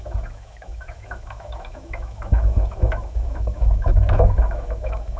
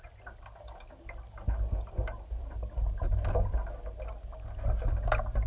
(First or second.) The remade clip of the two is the first